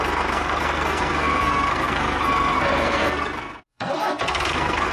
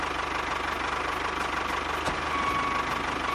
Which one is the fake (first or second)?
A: first